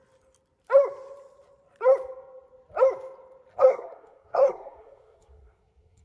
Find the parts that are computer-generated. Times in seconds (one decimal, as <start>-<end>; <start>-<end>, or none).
3.6-6.0